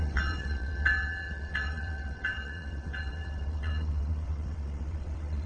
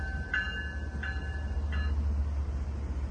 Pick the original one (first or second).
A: second